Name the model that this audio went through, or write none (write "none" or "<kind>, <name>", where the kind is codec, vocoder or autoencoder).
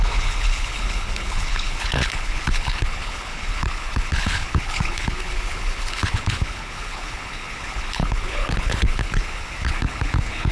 codec, HILCodec